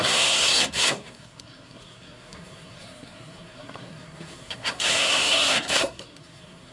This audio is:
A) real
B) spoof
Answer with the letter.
B